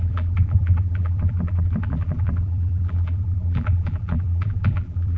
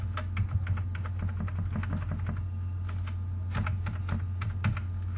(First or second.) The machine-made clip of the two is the first